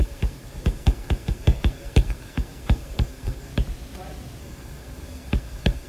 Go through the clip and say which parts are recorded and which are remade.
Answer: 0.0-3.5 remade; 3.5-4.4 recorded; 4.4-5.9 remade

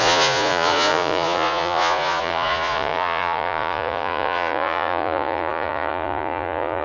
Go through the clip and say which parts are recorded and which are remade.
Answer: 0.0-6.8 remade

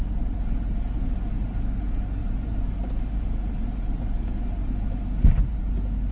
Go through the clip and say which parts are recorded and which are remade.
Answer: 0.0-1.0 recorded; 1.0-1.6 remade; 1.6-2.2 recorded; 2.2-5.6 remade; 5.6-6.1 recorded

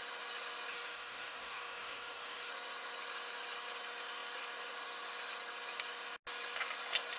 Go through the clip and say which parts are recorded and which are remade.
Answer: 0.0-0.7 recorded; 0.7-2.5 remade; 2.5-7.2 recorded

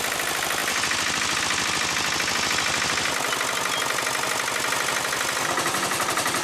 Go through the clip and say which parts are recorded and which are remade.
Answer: 0.0-0.6 recorded; 0.6-1.4 remade; 1.4-6.4 recorded